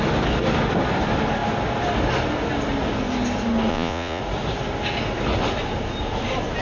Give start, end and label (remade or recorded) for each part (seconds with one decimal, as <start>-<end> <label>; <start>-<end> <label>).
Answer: 0.0-3.7 recorded; 3.7-4.2 remade; 4.2-6.6 recorded